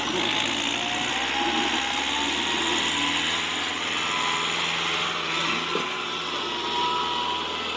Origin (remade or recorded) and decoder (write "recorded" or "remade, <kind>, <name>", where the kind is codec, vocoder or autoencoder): recorded